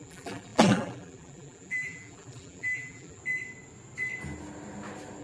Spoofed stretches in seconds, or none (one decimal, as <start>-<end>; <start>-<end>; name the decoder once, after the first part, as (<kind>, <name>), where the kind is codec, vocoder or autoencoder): 0.0-3.2 (vocoder, BigVGAN v2)